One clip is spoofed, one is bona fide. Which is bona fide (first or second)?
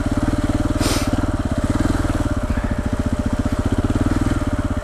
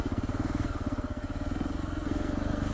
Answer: first